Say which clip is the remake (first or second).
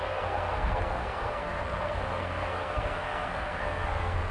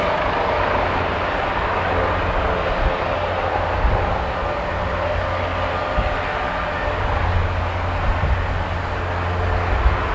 first